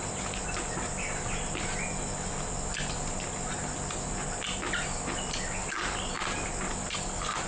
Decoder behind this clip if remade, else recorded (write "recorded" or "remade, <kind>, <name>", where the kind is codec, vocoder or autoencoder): recorded